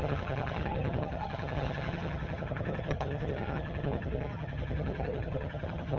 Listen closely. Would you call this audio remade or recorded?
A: remade